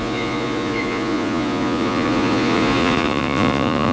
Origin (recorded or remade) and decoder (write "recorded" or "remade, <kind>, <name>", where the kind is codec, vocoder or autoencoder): remade, vocoder, Vocos